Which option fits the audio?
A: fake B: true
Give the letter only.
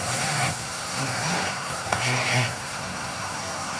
A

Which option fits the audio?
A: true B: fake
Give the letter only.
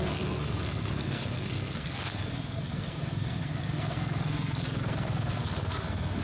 B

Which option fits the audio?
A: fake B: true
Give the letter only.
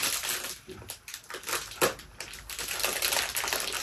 B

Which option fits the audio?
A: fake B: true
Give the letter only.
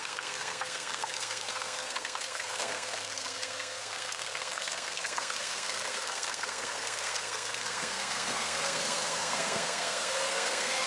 A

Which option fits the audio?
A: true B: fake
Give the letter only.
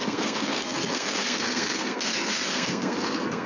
B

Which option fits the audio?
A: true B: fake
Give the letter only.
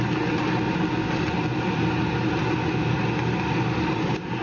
A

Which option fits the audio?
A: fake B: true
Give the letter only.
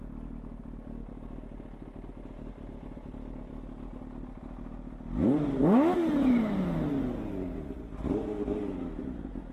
B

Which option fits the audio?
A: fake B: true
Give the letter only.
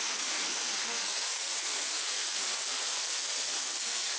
A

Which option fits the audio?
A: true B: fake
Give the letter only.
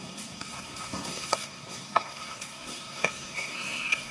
B